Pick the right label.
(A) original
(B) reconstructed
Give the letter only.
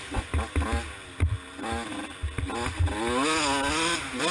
A